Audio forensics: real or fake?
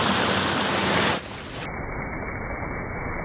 real